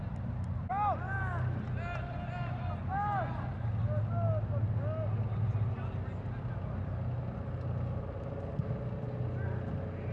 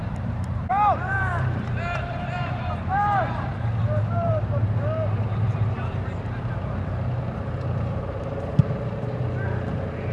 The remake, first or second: second